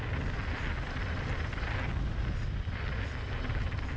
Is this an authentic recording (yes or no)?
yes